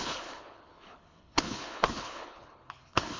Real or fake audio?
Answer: fake